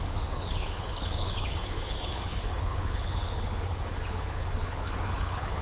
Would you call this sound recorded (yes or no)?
no